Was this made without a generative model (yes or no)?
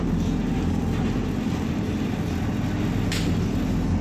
yes